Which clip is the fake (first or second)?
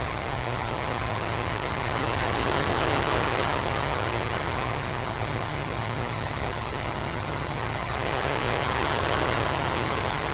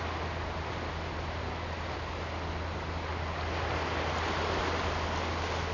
first